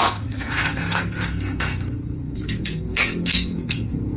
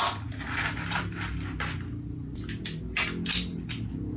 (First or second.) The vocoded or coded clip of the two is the first